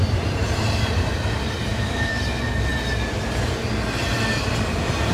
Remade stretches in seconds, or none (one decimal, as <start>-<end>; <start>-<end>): 1.7-2.2